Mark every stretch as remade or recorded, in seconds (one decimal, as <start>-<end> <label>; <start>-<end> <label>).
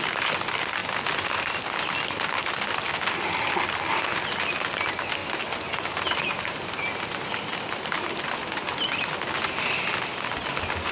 0.0-5.2 recorded; 5.2-8.1 remade; 8.1-10.9 recorded